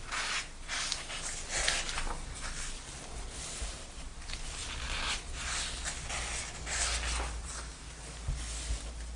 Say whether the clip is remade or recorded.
recorded